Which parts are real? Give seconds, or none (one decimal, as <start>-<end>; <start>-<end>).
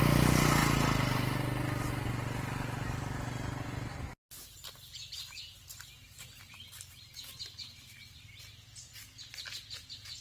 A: 0.0-10.2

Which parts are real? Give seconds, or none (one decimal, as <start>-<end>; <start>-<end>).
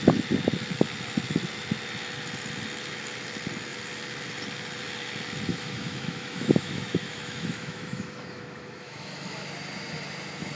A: 0.0-5.5; 9.5-10.6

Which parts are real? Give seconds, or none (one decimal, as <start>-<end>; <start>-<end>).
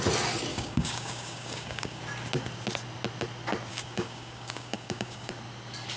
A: 0.0-0.5; 2.0-3.7; 5.3-6.0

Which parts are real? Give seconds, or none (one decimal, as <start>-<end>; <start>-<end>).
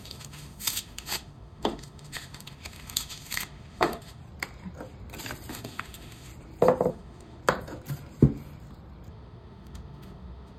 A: 4.2-5.5; 6.3-6.9; 7.4-9.1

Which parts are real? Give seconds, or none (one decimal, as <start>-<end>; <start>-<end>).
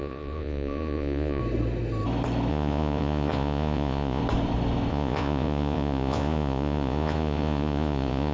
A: 1.4-2.5; 4.2-4.9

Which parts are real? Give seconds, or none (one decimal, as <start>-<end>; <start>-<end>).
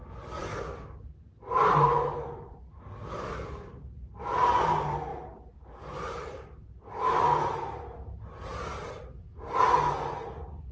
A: 0.0-5.1; 9.6-10.7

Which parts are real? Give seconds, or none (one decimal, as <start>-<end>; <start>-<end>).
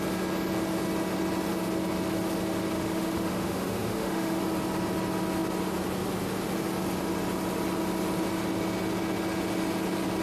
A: 0.0-2.7; 4.4-10.2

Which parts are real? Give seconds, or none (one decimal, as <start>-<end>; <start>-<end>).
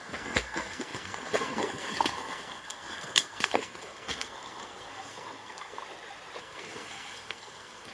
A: 5.8-6.4